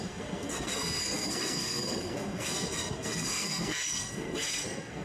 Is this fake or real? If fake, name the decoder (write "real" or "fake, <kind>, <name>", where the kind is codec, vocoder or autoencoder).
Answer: fake, codec, SNAC